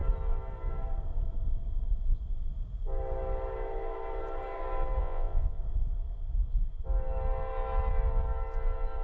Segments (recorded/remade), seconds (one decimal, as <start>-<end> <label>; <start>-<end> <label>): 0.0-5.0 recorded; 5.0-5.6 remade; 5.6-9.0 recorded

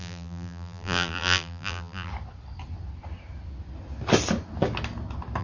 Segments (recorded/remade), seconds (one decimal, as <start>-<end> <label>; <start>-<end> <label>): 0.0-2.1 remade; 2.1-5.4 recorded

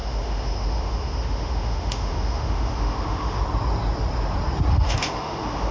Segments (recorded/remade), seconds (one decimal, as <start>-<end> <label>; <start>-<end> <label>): 0.0-3.4 remade; 3.4-4.7 recorded; 4.7-5.7 remade